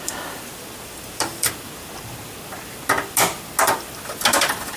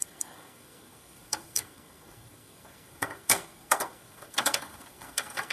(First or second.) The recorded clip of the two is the first